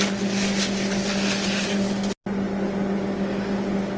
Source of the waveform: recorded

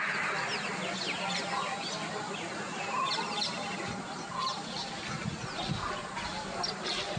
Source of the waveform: recorded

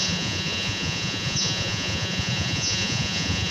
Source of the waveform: remade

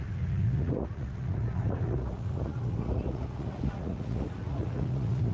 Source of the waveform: remade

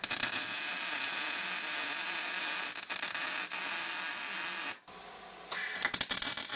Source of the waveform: recorded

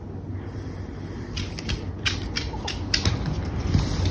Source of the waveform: recorded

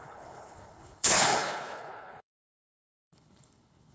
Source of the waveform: remade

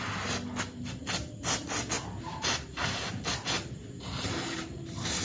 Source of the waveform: recorded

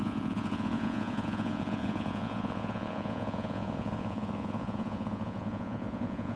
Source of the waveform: remade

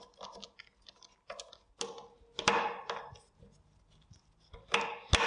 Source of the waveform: recorded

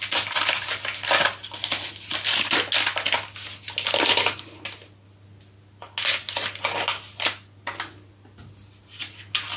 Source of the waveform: recorded